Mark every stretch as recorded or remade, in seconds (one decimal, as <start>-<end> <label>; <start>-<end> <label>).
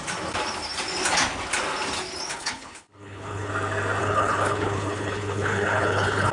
0.0-2.3 recorded; 2.3-3.5 remade; 3.5-4.0 recorded; 4.0-6.3 remade